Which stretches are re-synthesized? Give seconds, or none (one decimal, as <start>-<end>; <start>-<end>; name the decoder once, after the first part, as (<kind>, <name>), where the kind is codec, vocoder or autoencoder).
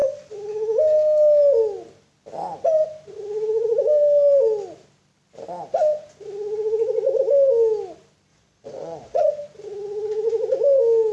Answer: 8.3-9.3 (vocoder, Vocos)